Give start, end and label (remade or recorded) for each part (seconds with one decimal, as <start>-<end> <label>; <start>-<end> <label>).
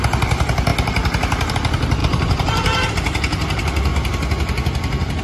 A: 0.0-2.0 recorded; 2.0-2.9 remade; 2.9-5.2 recorded